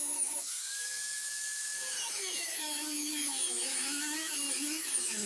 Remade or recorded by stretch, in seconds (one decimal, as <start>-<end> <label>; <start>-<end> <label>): 0.0-5.3 remade